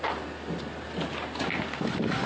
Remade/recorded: recorded